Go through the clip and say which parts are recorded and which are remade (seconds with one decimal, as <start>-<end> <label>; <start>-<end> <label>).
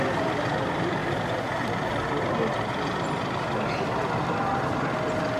0.0-5.4 recorded